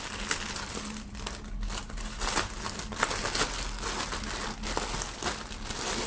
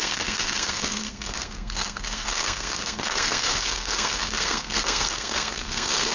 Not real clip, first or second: second